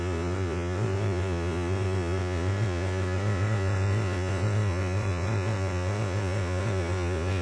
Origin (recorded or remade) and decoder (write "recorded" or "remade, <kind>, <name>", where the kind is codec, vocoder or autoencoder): remade, vocoder, Vocos